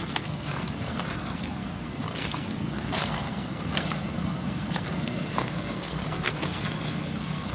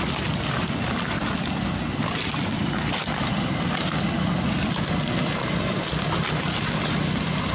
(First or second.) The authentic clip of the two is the second